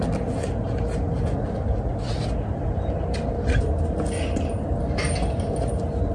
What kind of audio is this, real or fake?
real